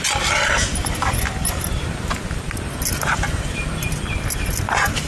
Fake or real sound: real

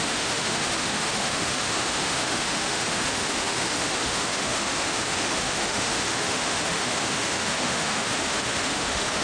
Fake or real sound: fake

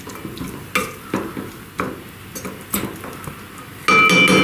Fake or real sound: real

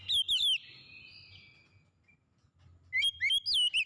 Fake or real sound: real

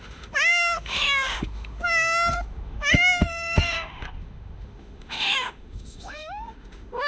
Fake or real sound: fake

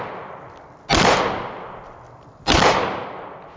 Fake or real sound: real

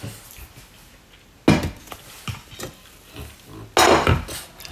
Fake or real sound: real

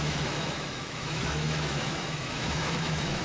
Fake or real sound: fake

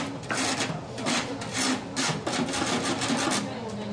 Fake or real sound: real